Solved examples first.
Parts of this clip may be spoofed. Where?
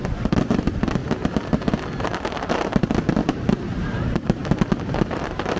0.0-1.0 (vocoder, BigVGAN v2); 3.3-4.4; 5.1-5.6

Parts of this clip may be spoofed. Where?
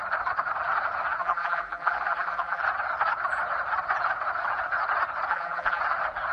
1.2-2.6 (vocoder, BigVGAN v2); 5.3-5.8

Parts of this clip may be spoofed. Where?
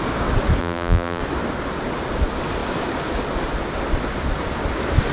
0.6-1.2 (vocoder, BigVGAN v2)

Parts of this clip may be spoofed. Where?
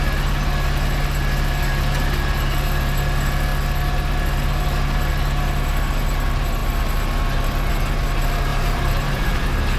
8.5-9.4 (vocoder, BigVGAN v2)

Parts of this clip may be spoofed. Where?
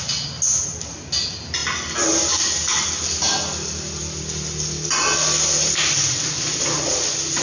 none